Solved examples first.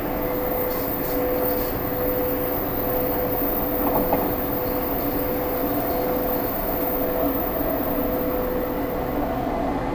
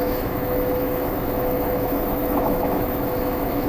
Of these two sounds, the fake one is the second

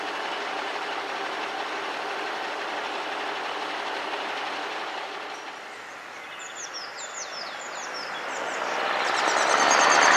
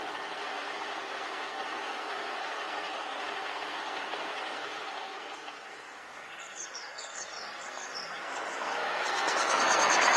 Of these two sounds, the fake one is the second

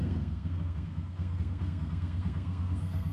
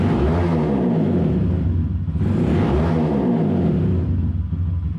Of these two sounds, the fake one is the first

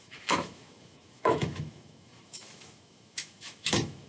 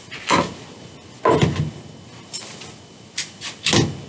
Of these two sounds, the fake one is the first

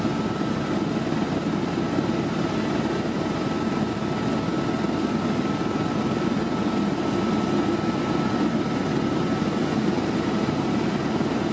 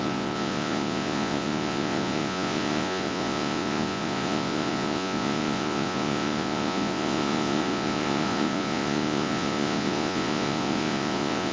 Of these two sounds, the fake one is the second